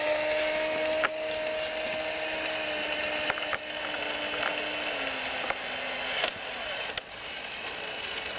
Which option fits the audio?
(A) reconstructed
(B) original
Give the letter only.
B